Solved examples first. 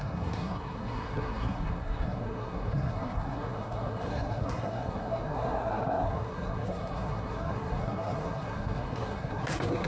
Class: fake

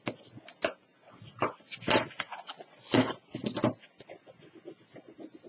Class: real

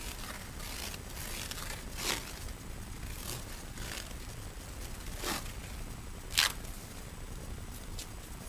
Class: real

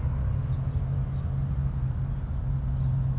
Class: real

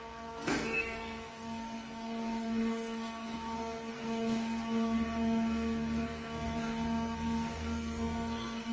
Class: fake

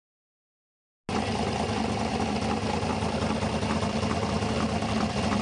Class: real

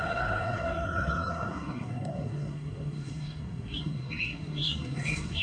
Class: fake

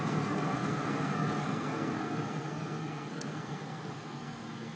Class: fake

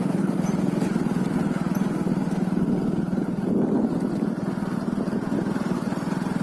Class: real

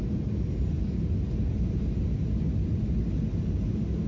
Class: real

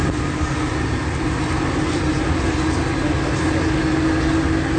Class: real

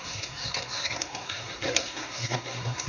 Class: fake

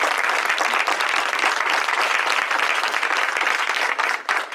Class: real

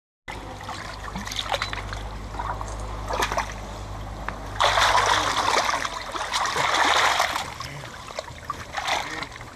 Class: real